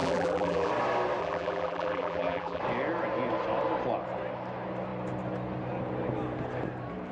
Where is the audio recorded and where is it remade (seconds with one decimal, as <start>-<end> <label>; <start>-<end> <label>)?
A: 0.0-0.7 remade; 0.7-1.2 recorded; 1.2-2.6 remade; 2.6-7.1 recorded